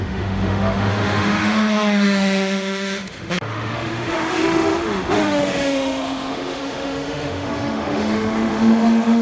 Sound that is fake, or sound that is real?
fake